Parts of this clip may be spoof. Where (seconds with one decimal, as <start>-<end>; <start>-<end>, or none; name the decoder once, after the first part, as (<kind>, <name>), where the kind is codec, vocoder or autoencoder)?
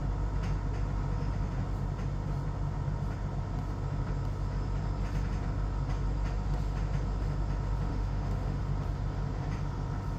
7.9-8.6 (autoencoder, DAC-VAE)